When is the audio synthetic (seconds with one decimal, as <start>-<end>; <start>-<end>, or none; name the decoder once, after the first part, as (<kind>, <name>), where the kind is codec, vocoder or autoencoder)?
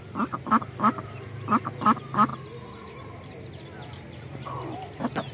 none